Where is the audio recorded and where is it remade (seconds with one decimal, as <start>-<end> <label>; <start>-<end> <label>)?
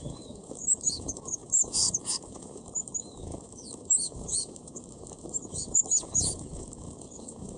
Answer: 0.0-7.6 remade